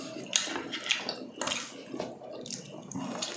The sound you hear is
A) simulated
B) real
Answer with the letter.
B